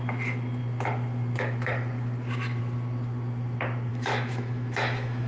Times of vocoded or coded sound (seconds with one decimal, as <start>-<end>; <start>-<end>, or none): 3.9-5.3